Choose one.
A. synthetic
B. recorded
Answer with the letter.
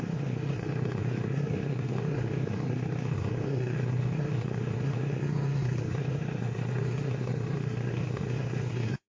A